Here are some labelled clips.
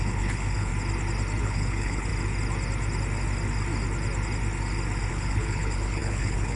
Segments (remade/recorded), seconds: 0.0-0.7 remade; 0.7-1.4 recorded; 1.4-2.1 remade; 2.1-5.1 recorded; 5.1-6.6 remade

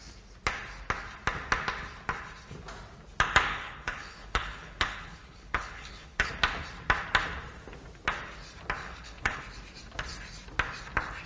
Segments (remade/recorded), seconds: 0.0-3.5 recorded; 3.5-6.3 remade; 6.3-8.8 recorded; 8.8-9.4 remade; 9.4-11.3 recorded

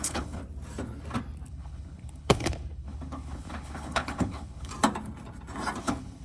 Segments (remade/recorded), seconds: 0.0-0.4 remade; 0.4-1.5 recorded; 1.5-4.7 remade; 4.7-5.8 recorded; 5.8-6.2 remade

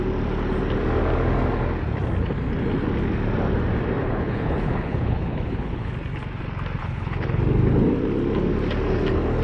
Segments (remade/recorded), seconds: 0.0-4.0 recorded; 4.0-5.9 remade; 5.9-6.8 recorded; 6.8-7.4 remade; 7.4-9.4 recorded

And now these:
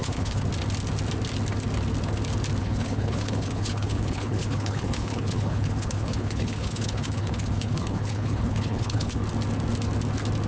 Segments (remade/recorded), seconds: 0.0-0.5 remade; 0.5-2.6 recorded; 2.6-9.2 remade; 9.2-10.5 recorded

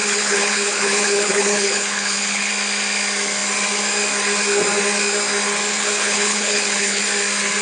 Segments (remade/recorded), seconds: 0.0-2.5 remade; 2.5-5.7 recorded; 5.7-7.0 remade; 7.0-7.6 recorded

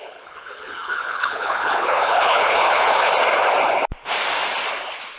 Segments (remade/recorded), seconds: 0.0-3.1 remade; 3.1-5.2 recorded

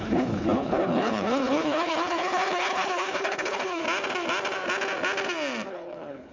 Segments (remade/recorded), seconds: 0.0-3.8 remade; 3.8-5.7 recorded; 5.7-6.3 remade